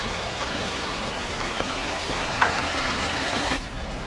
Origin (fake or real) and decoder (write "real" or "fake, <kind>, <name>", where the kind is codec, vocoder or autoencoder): fake, codec, SNAC